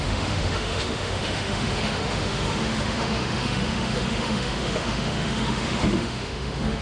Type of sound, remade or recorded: remade